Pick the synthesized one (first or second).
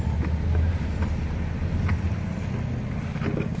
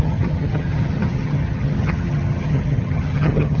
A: second